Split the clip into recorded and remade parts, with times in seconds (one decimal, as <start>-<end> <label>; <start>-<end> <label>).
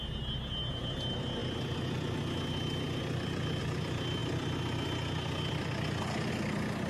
0.0-6.9 recorded